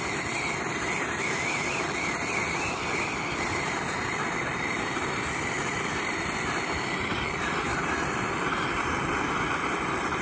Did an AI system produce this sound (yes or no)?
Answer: yes